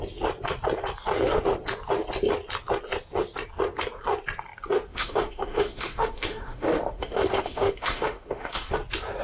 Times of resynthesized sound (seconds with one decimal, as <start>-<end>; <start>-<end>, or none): 4.9-8.7